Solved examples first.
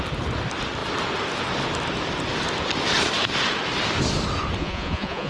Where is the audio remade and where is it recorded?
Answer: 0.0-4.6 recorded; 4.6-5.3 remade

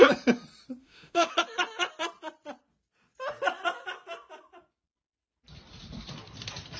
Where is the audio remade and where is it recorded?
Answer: 0.0-0.8 recorded; 0.8-1.3 remade; 1.3-6.8 recorded

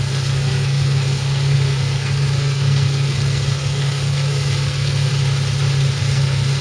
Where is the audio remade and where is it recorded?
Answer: 0.0-5.1 remade; 5.1-6.0 recorded; 6.0-6.6 remade

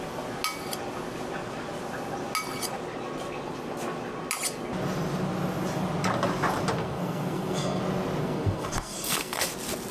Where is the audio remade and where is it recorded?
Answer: 0.0-6.8 recorded; 6.8-7.8 remade; 7.8-8.2 recorded; 8.2-9.5 remade; 9.5-9.9 recorded

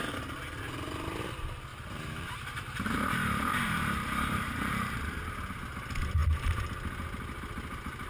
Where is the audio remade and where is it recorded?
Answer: 0.0-1.7 recorded; 1.7-5.2 remade; 5.2-8.1 recorded

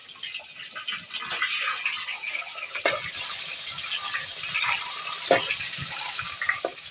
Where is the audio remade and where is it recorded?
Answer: 0.0-6.9 recorded

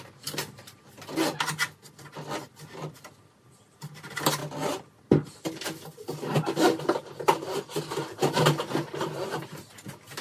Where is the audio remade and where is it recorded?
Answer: 0.0-10.2 recorded